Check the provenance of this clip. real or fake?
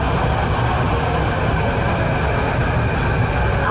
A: real